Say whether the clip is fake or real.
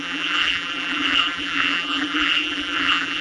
fake